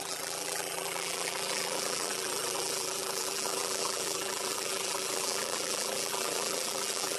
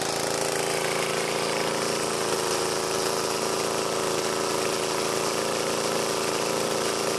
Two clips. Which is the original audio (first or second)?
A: second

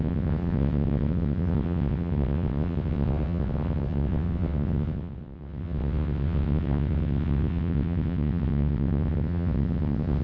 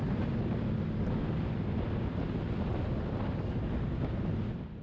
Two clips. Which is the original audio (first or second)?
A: second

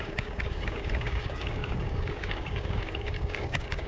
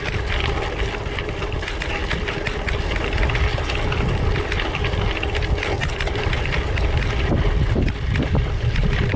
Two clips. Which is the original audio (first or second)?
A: second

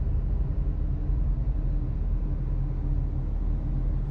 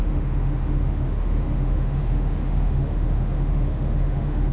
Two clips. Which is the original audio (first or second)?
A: first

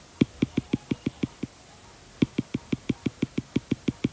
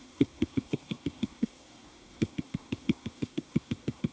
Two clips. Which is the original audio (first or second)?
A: first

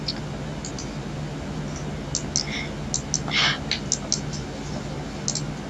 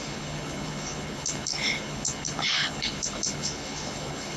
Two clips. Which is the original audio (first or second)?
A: first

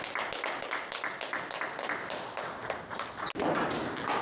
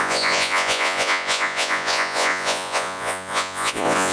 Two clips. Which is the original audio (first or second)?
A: first